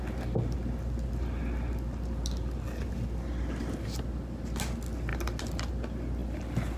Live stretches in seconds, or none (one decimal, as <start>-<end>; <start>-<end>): 0.0-6.8